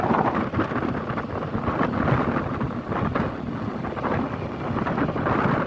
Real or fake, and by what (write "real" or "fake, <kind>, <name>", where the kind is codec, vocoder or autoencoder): real